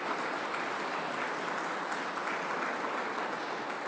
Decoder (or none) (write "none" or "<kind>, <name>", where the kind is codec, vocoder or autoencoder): none